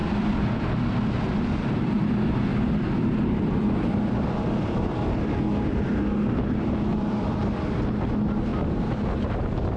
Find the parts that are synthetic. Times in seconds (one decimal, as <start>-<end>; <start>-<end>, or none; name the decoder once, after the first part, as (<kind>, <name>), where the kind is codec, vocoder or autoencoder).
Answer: 0.0-2.0 (vocoder, BigVGAN v2); 2.5-6.0; 6.9-7.8